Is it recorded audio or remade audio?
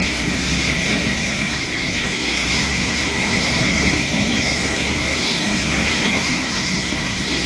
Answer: remade